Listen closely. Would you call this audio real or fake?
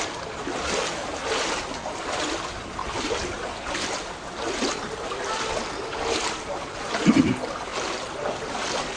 real